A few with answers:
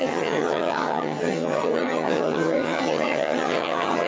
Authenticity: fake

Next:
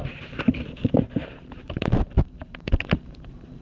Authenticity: fake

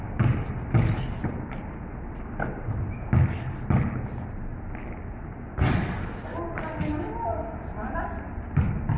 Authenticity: real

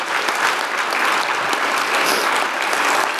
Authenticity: real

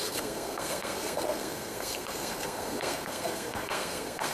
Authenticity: fake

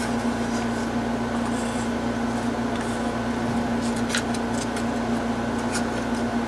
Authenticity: real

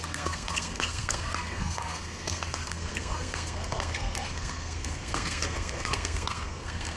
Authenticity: fake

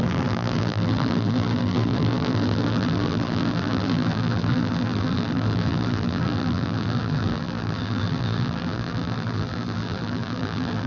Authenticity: fake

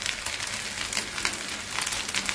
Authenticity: real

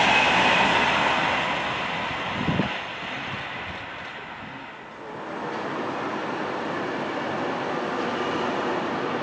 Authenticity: real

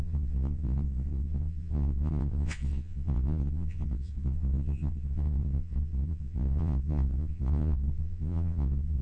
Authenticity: fake